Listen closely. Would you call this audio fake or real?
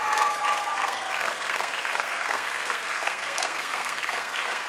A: fake